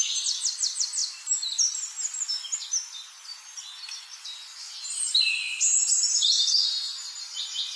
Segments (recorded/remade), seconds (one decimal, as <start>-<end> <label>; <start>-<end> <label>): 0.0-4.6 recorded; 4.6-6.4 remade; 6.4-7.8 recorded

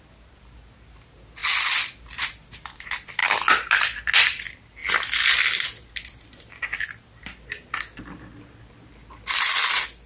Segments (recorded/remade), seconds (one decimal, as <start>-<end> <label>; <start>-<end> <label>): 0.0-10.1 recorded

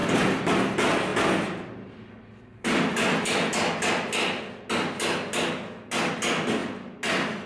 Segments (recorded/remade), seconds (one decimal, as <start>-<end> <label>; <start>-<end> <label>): 0.0-7.5 recorded

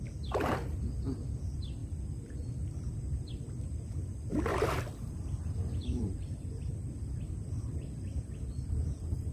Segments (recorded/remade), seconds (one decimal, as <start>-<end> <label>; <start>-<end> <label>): 0.0-1.8 recorded; 1.8-3.3 remade; 3.3-4.5 recorded; 4.5-9.3 remade

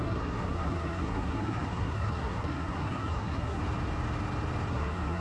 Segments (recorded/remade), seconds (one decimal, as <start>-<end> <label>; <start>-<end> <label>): 0.0-3.6 remade; 3.6-4.7 recorded; 4.7-5.2 remade

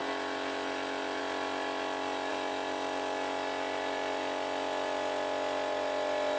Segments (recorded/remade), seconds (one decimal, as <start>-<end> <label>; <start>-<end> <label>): 0.0-6.4 recorded